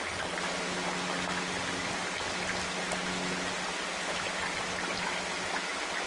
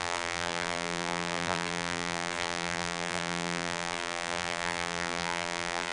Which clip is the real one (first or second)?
first